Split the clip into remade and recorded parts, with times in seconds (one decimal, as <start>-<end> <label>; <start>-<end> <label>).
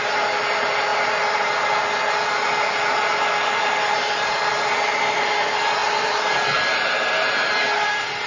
0.0-8.3 recorded